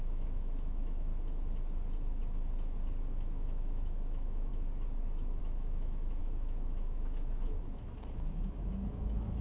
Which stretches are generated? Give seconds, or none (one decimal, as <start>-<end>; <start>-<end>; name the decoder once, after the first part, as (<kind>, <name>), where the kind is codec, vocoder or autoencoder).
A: 0.0-1.1 (autoencoder, DAC-VAE); 3.2-4.5; 5.4-9.4